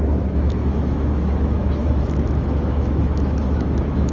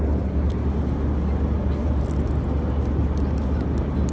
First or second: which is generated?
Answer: first